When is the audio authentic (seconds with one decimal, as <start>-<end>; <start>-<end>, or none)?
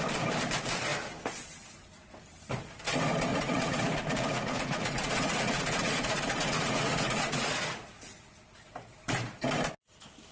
0.0-3.3; 7.5-10.3